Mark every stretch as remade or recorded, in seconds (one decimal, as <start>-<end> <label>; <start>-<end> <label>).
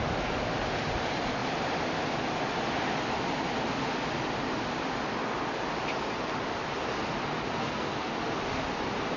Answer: 0.0-7.6 recorded; 7.6-8.1 remade; 8.1-9.2 recorded